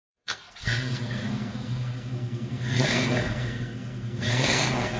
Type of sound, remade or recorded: remade